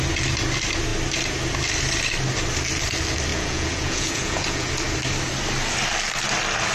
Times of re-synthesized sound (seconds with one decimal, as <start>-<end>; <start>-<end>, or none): 3.3-4.7